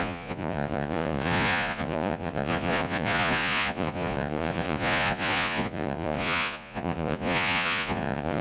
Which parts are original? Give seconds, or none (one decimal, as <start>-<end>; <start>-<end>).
none

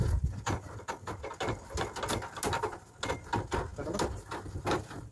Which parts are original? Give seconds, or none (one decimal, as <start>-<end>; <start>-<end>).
0.0-5.1

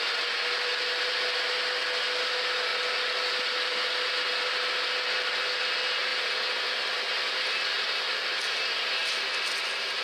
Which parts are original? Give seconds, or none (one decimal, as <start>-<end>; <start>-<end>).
0.0-10.0

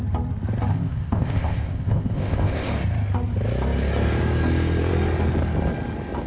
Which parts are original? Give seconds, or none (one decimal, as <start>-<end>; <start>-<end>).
0.0-0.7; 2.7-6.3

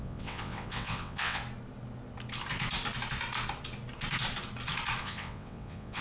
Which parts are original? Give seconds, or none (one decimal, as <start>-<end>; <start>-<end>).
1.4-5.0

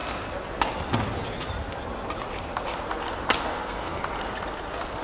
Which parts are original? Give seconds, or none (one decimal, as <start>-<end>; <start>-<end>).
0.0-3.5; 4.0-5.0